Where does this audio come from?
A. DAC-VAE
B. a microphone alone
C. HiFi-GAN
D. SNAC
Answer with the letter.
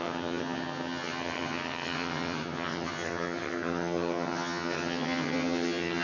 C